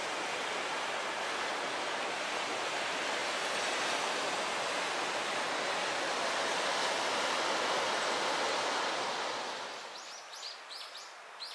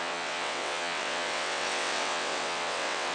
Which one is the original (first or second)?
first